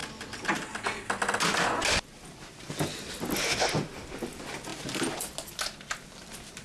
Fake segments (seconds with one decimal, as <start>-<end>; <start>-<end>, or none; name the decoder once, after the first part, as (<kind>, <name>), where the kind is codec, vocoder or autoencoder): none

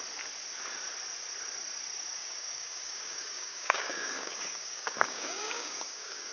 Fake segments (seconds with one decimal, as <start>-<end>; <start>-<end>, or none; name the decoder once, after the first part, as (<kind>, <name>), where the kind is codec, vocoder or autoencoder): 2.2-6.3 (codec, DAC)